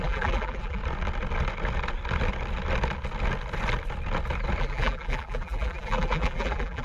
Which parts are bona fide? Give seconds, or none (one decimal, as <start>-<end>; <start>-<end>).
0.8-4.6